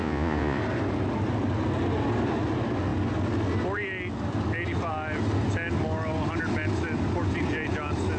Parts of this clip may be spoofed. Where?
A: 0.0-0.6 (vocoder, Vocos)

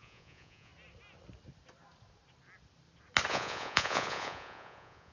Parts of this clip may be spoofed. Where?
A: 0.0-0.7 (vocoder, Vocos); 3.3-5.1

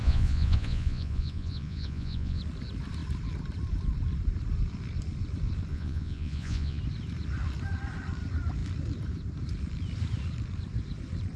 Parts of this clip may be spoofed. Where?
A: 0.0-2.4 (vocoder, Vocos); 5.7-6.8

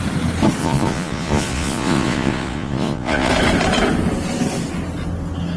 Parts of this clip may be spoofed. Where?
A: 0.6-3.3 (vocoder, Vocos)

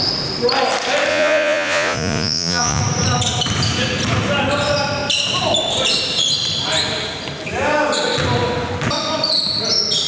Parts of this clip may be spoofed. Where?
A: 1.1-2.8 (vocoder, Vocos)

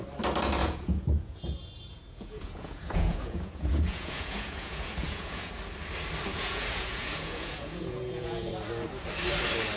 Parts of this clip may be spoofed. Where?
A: 0.6-5.5 (vocoder, Vocos); 6.3-8.5

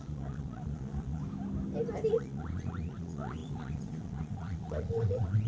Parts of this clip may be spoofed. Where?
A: 0.0-1.2 (vocoder, Vocos); 2.1-5.5